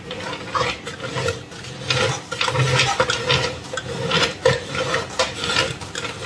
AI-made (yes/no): no